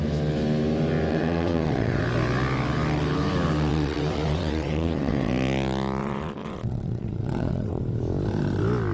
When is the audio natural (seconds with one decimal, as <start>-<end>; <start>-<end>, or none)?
0.0-1.1; 2.0-3.7; 5.3-6.0; 7.8-8.9